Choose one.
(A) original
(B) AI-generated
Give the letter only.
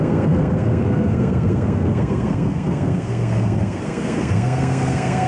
B